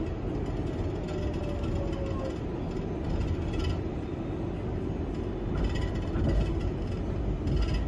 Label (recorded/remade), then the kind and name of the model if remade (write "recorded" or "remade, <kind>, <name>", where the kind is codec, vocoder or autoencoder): recorded